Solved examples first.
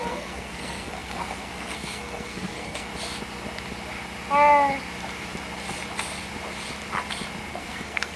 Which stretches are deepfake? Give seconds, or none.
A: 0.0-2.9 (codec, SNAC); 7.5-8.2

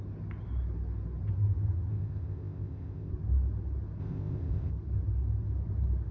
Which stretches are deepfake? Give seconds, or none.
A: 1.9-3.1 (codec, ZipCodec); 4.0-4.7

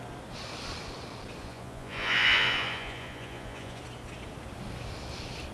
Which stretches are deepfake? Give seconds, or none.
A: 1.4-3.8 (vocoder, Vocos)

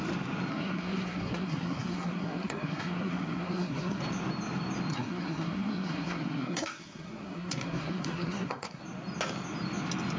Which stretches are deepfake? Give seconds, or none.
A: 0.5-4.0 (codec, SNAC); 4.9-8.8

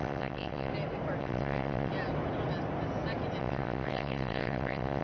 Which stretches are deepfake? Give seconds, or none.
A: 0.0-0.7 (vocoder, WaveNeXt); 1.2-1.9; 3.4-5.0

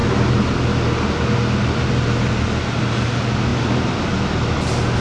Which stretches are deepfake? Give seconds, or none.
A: none

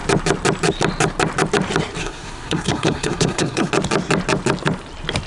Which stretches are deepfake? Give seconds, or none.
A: 2.0-3.7 (codec, SNAC)